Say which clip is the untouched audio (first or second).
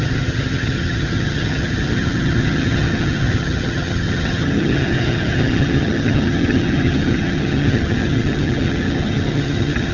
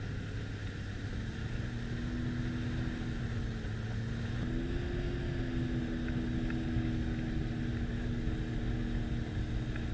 second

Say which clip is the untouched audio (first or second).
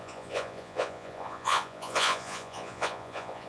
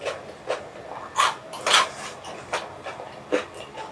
second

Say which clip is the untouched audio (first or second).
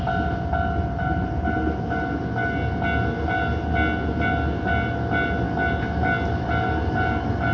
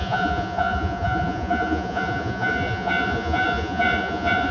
first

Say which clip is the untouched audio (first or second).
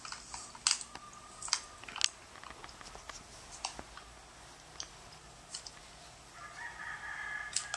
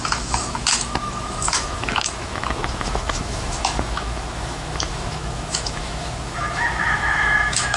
first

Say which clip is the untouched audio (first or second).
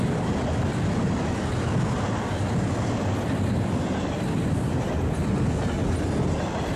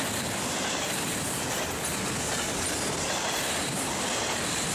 first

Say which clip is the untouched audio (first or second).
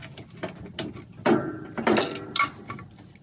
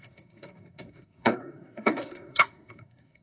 first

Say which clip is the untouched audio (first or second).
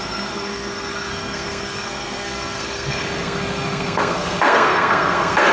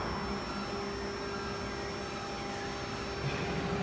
second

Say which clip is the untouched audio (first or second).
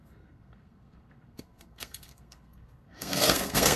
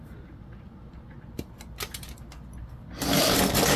second